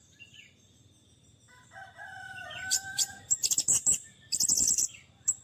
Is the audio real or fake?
fake